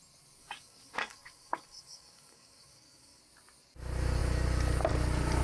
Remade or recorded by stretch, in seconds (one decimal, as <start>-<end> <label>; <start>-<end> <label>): 0.0-0.4 recorded; 0.4-3.2 remade; 3.2-5.4 recorded